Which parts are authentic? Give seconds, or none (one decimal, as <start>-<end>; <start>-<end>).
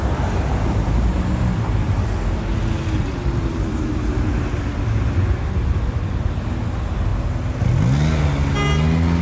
0.0-9.2